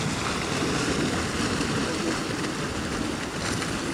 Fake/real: real